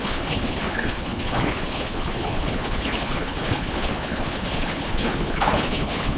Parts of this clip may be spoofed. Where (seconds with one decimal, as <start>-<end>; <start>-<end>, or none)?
0.0-6.2